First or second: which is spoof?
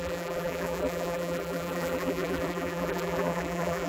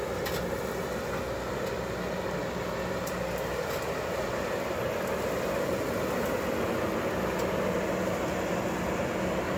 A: first